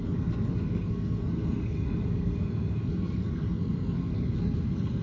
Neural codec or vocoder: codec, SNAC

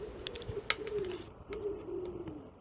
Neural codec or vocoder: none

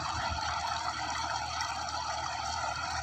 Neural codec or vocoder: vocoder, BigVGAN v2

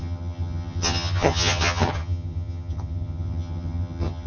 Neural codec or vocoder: vocoder, HiFi-GAN